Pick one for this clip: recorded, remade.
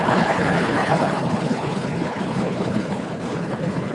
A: remade